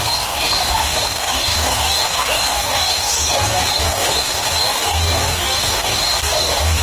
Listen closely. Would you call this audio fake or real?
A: fake